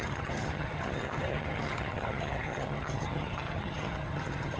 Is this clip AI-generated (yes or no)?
yes